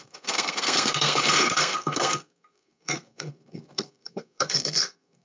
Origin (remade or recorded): remade